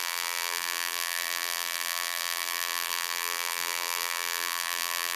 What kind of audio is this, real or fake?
fake